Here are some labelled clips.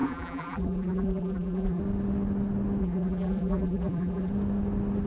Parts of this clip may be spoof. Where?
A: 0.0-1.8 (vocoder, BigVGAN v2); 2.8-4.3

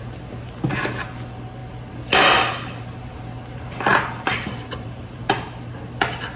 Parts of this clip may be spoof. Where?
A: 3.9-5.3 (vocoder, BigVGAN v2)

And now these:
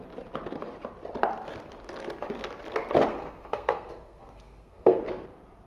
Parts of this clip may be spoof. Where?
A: 3.1-5.0 (codec, SNAC)

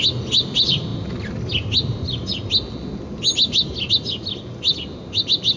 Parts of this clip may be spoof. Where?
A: none

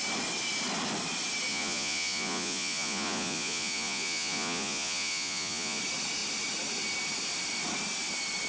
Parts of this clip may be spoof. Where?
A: 1.5-5.8 (vocoder, Vocos)

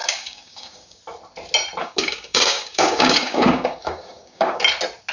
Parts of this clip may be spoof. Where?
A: 0.0-1.0 (codec, DAC); 1.8-4.6

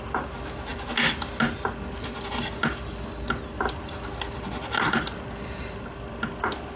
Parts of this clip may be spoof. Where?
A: none

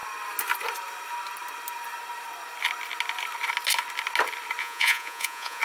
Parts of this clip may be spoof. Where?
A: 4.6-5.6 (vocoder, Vocos)